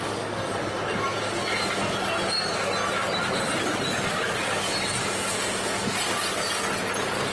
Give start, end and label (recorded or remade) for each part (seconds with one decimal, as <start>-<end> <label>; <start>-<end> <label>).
0.0-7.3 recorded